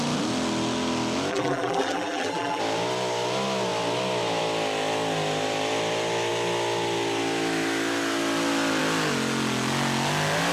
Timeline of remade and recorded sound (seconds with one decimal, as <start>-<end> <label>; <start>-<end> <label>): 0.0-1.3 recorded; 1.3-2.6 remade; 2.6-10.5 recorded